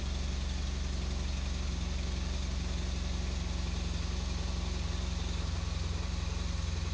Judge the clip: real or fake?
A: real